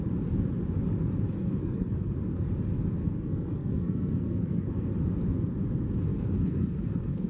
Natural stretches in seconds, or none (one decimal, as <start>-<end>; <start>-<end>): 0.0-1.4; 2.1-3.0; 4.9-6.1